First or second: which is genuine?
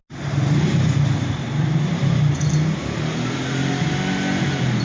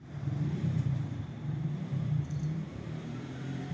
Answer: first